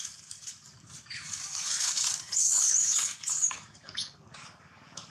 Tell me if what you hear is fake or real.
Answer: fake